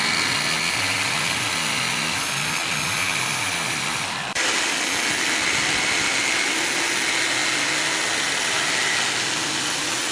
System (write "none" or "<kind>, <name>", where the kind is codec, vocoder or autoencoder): none